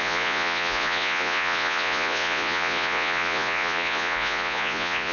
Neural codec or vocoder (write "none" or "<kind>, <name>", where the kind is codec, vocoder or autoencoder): vocoder, Vocos